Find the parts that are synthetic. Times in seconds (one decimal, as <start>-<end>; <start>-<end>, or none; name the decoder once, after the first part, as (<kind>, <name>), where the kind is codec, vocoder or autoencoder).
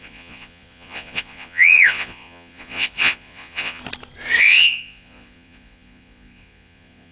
0.0-3.8 (vocoder, Vocos); 4.4-7.1